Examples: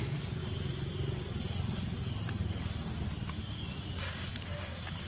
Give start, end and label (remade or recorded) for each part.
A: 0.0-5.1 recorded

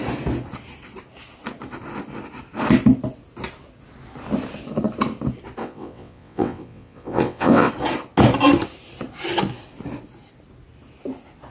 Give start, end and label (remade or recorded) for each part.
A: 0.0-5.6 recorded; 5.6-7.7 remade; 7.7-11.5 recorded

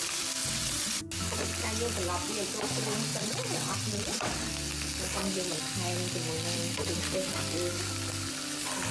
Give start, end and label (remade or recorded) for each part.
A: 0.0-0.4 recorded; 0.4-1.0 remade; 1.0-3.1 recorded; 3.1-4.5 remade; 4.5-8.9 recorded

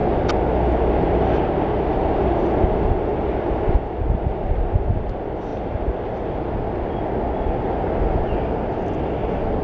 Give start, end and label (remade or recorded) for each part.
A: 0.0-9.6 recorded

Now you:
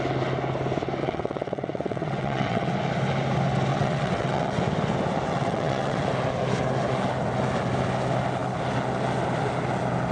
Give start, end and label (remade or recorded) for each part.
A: 0.0-1.0 recorded; 1.0-2.7 remade; 2.7-3.7 recorded; 3.7-4.6 remade; 4.6-5.3 recorded; 5.3-6.1 remade; 6.1-10.1 recorded

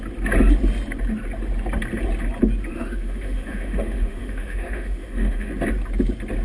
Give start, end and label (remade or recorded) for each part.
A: 0.0-2.7 recorded; 2.7-5.5 remade; 5.5-6.4 recorded